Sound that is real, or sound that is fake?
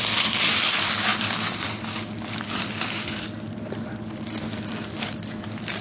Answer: real